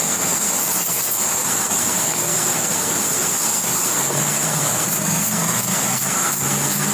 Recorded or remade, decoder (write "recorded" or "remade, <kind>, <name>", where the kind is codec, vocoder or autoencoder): remade, codec, SNAC